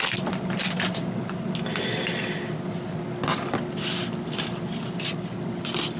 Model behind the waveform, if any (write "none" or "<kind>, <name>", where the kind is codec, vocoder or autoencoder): none